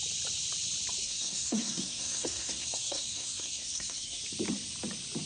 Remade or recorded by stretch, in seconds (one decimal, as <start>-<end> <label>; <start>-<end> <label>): 0.0-1.0 recorded; 1.0-4.2 remade; 4.2-5.3 recorded